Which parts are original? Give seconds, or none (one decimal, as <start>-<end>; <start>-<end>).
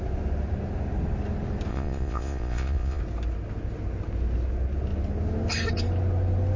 0.0-1.7; 3.0-6.6